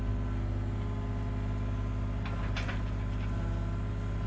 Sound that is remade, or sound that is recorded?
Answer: recorded